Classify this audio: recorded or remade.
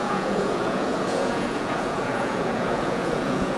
remade